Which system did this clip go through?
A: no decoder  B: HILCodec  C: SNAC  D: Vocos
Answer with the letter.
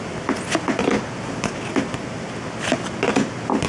A